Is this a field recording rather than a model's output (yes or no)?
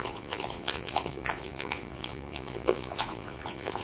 no